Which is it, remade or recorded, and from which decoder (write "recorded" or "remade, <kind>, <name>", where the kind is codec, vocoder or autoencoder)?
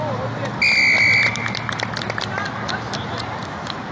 recorded